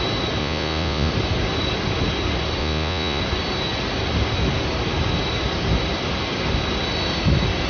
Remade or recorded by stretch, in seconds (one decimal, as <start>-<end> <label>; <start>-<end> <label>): 0.0-0.4 recorded; 0.4-1.1 remade; 1.1-2.6 recorded; 2.6-3.2 remade; 3.2-7.7 recorded

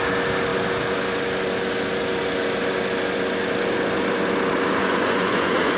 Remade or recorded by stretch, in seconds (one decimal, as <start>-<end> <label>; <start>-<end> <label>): 0.0-4.8 recorded; 4.8-5.8 remade

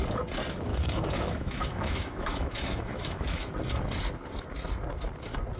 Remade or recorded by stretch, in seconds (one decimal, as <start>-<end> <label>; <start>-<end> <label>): 0.0-0.7 recorded; 0.7-3.5 remade; 3.5-5.6 recorded

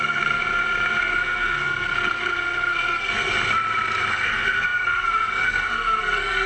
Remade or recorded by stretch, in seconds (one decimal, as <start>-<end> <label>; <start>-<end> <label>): 0.0-0.4 remade; 0.4-1.0 recorded; 1.0-3.3 remade; 3.3-4.1 recorded; 4.1-6.5 remade

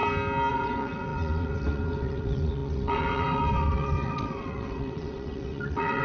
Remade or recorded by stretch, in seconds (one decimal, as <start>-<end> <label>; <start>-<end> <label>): 0.0-0.5 recorded; 0.5-6.0 remade

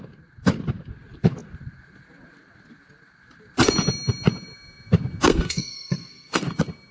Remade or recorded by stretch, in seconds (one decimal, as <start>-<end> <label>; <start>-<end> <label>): 0.0-5.3 recorded; 5.3-6.4 remade; 6.4-6.9 recorded

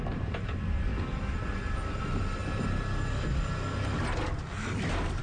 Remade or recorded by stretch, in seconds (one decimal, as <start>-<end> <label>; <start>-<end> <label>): 0.0-5.2 recorded

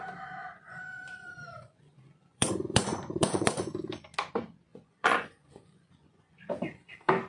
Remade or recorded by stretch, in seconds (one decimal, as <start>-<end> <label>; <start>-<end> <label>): 0.0-0.4 recorded; 0.4-3.7 remade; 3.7-4.7 recorded; 4.7-6.5 remade; 6.5-7.3 recorded